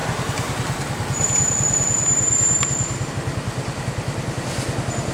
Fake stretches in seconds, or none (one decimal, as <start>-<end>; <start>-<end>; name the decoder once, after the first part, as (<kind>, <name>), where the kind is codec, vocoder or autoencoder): 0.0-3.1 (vocoder, BigVGAN v2)